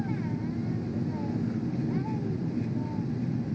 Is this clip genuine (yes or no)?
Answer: yes